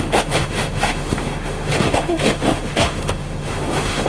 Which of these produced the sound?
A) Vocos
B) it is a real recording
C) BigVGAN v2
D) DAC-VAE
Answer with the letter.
D